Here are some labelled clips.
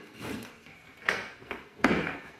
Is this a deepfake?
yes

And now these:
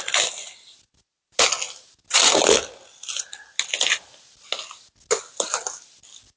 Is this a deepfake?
no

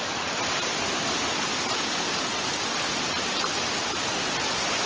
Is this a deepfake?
no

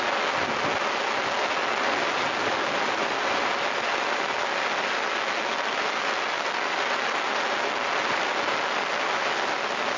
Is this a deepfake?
no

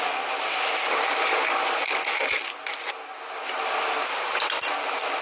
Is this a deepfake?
no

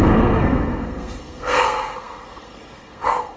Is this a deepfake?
yes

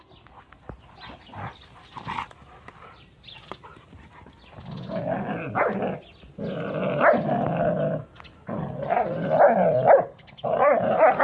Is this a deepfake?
no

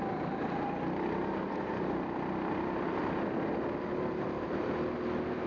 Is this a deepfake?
no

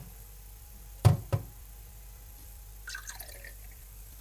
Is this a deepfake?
yes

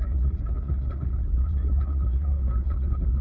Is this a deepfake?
yes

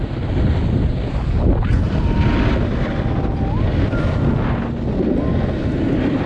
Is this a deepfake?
no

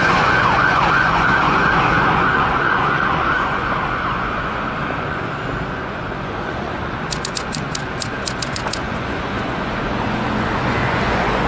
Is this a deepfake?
yes